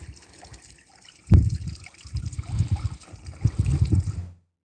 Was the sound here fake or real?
real